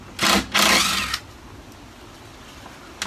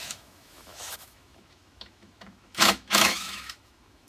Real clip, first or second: first